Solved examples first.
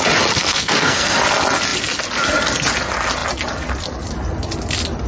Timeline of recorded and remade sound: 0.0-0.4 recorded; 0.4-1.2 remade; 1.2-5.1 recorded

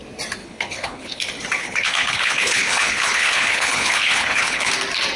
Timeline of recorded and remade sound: 0.0-0.4 recorded; 0.4-1.2 remade; 1.2-1.6 recorded; 1.6-4.7 remade; 4.7-5.2 recorded

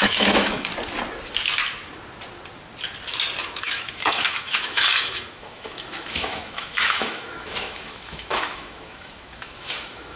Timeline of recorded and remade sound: 0.0-0.7 remade; 0.7-3.4 recorded; 3.4-10.2 remade

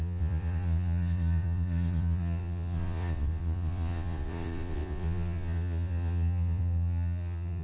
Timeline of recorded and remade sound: 0.0-7.6 remade